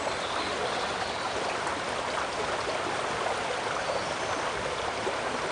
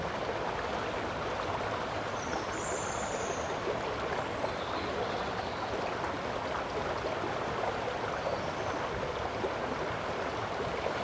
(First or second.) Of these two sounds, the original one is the second